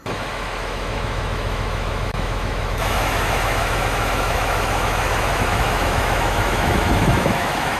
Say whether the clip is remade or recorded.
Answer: remade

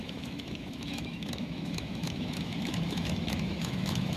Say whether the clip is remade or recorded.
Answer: remade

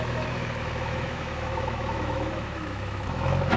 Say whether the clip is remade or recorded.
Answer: remade